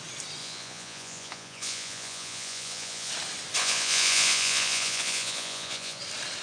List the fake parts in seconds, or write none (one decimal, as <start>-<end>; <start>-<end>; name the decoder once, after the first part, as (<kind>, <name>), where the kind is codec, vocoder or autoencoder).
0.4-3.1 (vocoder, Vocos); 3.6-6.0